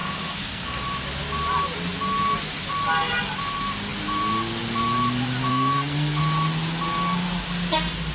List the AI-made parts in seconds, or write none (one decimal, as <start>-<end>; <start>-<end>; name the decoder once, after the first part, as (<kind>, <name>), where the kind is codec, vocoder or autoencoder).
0.0-0.8 (codec, SNAC); 5.5-6.2